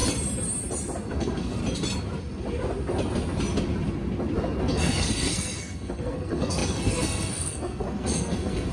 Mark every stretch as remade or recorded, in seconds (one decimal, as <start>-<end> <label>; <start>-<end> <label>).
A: 0.0-1.1 recorded; 1.1-1.6 remade; 1.6-4.6 recorded; 4.6-8.7 remade